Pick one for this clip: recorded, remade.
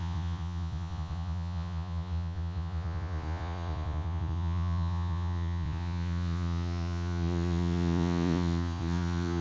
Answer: remade